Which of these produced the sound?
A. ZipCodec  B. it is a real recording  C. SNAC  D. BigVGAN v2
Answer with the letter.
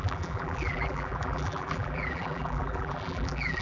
D